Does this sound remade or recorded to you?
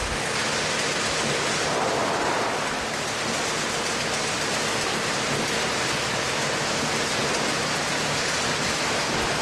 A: recorded